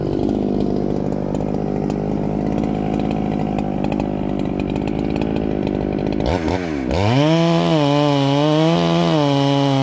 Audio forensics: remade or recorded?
recorded